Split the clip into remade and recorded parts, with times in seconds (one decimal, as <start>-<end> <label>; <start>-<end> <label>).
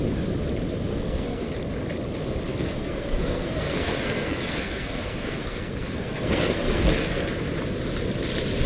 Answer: 0.0-0.9 recorded; 0.9-1.5 remade; 1.5-2.5 recorded; 2.5-7.3 remade; 7.3-8.7 recorded